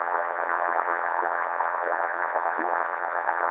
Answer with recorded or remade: remade